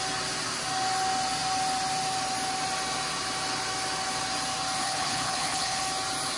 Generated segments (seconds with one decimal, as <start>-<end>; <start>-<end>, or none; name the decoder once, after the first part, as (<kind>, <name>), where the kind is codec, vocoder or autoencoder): 4.8-5.8 (codec, HILCodec)